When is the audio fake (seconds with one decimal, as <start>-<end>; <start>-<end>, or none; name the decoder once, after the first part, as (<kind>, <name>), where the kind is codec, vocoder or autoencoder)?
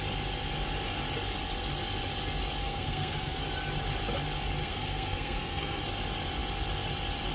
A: 2.6-3.4 (codec, SNAC); 4.6-5.8